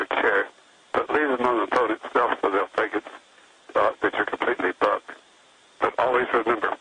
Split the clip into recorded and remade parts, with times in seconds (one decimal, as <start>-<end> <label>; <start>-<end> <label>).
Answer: 0.0-6.8 recorded